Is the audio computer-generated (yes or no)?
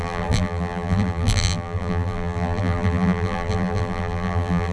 yes